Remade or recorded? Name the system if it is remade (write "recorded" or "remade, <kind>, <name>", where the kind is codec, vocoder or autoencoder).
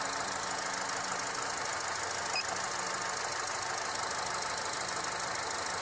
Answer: recorded